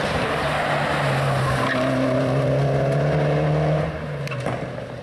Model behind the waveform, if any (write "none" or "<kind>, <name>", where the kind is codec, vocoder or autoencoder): none